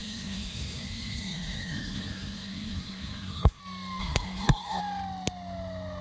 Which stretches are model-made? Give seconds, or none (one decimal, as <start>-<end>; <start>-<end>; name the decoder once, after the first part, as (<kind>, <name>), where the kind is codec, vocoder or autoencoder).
0.0-3.6 (codec, SNAC); 4.0-4.8